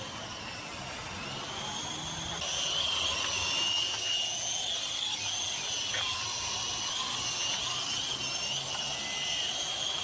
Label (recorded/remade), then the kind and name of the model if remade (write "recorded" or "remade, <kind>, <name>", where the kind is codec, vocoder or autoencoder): recorded